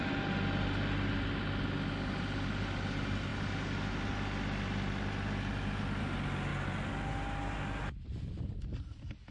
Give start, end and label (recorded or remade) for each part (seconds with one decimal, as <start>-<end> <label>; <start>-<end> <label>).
0.0-9.3 recorded